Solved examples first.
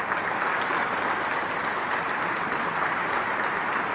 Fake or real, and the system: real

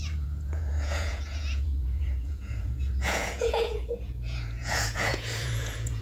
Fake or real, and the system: fake, vocoder, Vocos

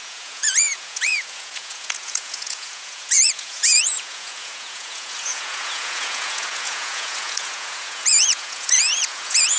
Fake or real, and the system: fake, vocoder, Vocos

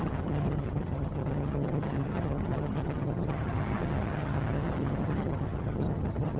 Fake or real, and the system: fake, vocoder, HiFi-GAN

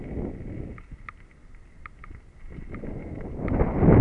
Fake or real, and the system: real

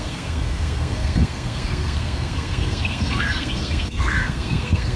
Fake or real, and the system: fake, codec, SNAC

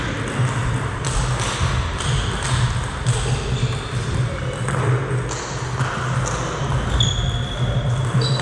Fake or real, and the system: real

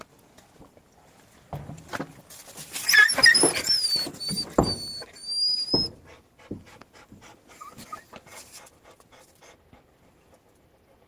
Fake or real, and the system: real